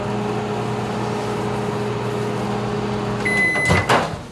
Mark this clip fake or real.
real